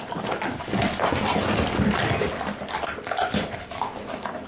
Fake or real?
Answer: real